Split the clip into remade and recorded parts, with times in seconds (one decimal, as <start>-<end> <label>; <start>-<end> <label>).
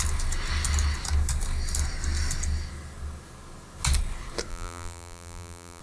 0.0-4.5 recorded; 4.5-5.8 remade